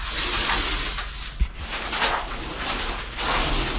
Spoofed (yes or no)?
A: no